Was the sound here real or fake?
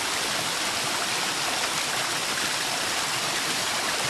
real